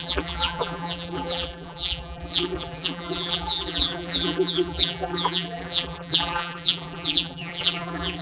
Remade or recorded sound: remade